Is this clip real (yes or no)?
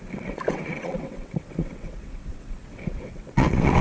no